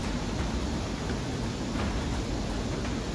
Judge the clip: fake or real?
real